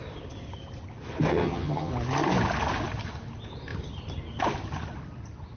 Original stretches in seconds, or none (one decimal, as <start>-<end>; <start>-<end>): 0.0-1.3; 1.9-5.6

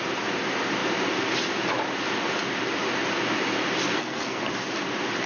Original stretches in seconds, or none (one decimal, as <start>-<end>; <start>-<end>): 0.0-3.8; 4.4-5.3

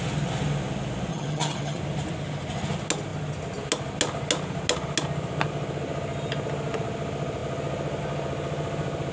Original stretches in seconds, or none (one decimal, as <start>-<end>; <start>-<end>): 0.0-1.1; 1.8-9.1